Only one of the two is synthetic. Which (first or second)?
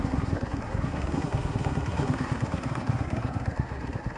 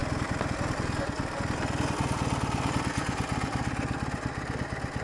first